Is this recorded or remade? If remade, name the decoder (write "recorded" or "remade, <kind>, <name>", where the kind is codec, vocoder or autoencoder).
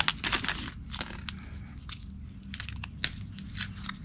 recorded